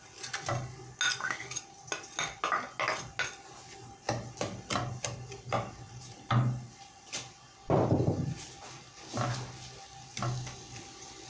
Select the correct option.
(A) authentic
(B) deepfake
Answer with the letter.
A